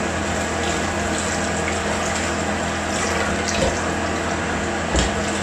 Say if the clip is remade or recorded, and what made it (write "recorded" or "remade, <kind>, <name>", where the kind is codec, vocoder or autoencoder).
recorded